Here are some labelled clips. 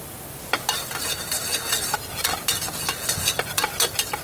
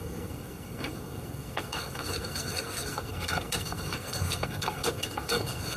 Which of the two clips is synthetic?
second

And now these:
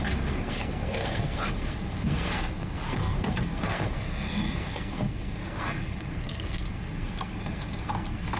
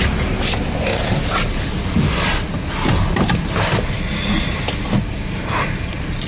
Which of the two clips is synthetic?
first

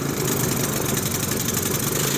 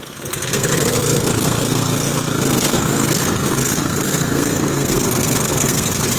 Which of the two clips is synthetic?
second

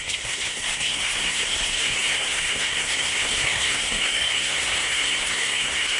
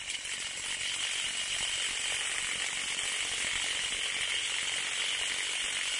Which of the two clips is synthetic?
first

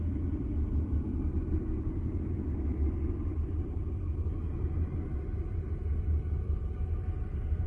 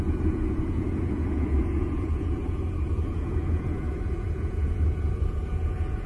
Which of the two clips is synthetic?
second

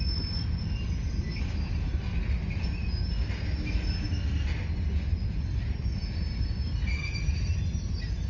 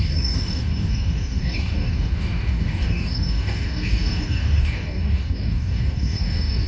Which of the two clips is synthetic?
second